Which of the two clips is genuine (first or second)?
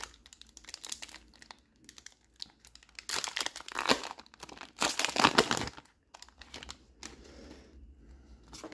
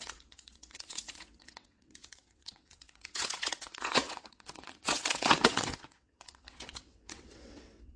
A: first